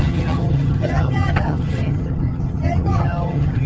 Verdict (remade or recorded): remade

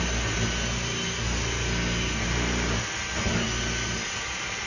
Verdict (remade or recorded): recorded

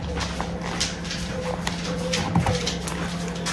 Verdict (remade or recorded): recorded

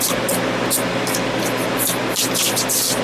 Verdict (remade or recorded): remade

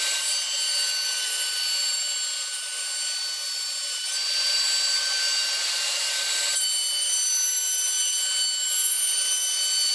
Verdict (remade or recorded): remade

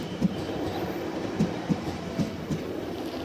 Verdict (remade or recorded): remade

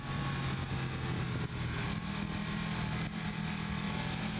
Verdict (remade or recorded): recorded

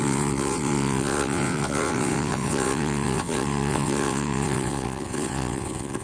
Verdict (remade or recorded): remade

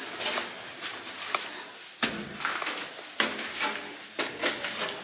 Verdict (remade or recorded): recorded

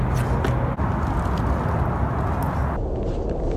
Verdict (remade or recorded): recorded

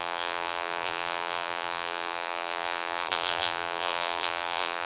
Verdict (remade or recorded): remade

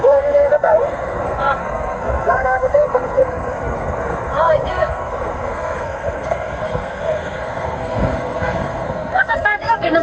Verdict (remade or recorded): remade